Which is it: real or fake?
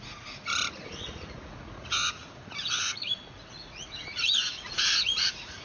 fake